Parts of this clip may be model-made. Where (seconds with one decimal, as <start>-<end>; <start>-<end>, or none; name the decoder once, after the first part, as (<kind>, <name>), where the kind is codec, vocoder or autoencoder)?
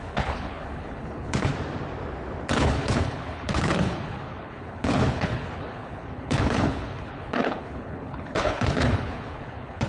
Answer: 0.0-1.5 (codec, HILCodec); 2.5-9.9